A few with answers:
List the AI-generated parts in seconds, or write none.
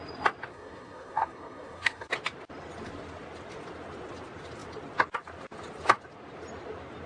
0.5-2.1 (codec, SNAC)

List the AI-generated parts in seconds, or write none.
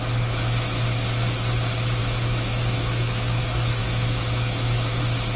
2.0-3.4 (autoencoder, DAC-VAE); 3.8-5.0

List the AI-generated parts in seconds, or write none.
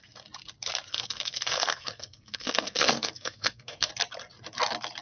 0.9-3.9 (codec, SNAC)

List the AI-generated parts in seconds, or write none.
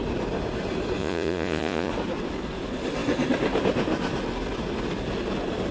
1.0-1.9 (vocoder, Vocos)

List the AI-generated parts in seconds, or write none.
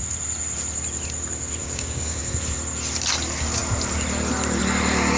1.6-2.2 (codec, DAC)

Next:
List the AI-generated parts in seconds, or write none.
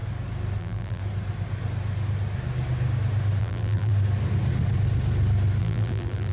0.6-1.0 (vocoder, BigVGAN v2); 3.4-3.9; 5.6-6.3